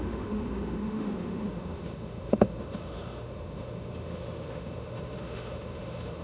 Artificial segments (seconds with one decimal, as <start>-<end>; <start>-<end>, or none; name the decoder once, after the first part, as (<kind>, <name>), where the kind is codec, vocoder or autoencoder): 0.0-6.2 (autoencoder, DAC-VAE)